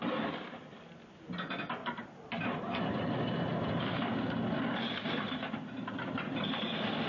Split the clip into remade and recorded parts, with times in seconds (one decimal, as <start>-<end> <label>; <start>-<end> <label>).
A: 0.0-1.8 recorded; 1.8-3.7 remade; 3.7-5.0 recorded; 5.0-5.9 remade; 5.9-7.1 recorded